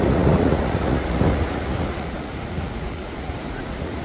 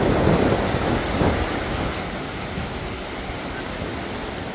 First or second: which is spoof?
first